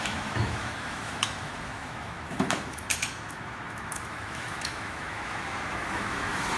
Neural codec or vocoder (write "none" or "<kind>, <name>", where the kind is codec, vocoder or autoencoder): autoencoder, DAC-VAE